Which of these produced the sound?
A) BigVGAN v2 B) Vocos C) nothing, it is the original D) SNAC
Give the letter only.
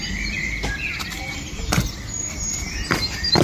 C